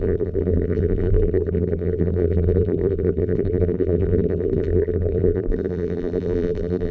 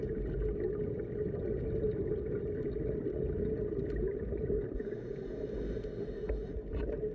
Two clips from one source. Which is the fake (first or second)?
first